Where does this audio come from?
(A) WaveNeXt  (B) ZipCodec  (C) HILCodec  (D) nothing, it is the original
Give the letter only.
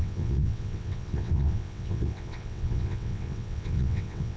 A